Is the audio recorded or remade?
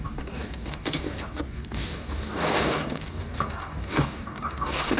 remade